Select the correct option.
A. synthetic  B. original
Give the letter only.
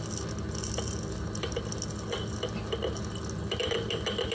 B